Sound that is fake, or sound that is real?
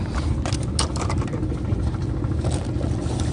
real